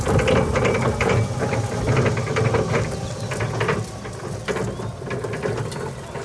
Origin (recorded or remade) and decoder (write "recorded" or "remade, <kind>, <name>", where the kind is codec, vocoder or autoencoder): recorded